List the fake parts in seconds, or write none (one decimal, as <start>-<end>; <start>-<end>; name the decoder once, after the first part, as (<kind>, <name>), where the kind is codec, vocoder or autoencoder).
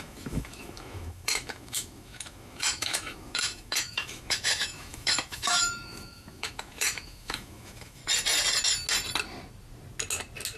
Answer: 0.0-8.0 (autoencoder, DAC-VAE)